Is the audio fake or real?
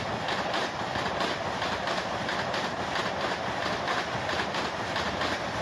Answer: real